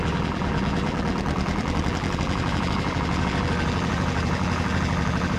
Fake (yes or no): yes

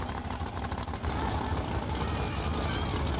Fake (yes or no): no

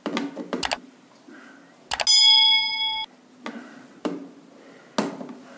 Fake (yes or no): no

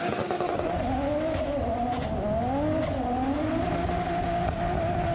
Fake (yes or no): no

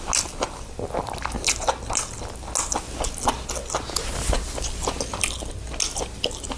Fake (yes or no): no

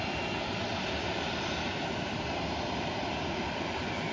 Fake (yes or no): yes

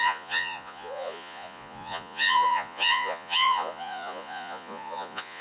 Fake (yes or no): yes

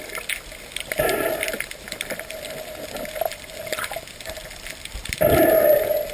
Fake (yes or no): no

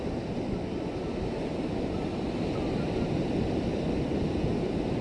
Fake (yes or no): no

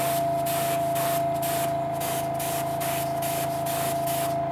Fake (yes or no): no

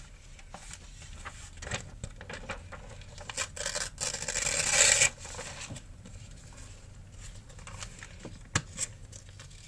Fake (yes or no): no